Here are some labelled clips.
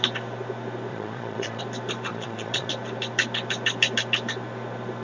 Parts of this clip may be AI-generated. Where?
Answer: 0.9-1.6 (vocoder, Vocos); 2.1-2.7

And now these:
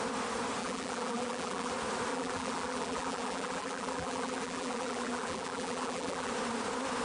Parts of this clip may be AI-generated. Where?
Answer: 0.6-1.7 (vocoder, BigVGAN v2); 2.1-6.3

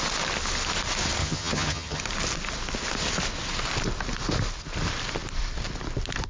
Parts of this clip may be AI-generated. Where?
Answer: 1.2-2.0 (vocoder, HiFi-GAN)

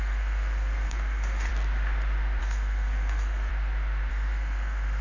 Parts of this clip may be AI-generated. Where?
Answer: 0.0-1.5 (codec, SNAC); 2.4-3.5; 4.1-5.0

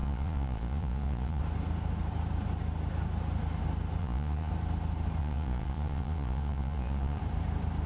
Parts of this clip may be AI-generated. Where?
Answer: 0.0-1.4 (vocoder, Vocos); 4.0-4.5; 5.2-7.2

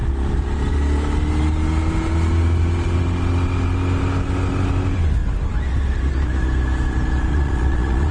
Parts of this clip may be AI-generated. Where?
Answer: 7.3-8.1 (vocoder, Vocos)

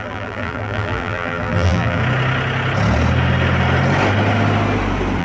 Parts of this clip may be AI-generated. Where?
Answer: 0.0-2.0 (vocoder, BigVGAN v2)

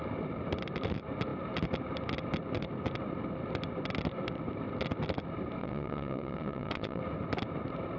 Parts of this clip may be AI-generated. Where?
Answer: 5.6-7.0 (vocoder, WaveNeXt)